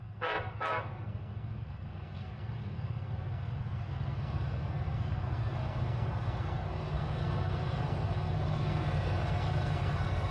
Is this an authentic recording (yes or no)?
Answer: no